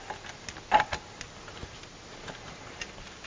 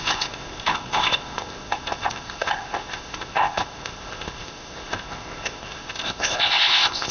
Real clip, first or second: first